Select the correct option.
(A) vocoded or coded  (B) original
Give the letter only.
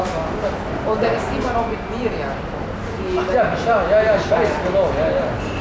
B